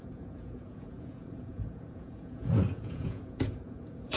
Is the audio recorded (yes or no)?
no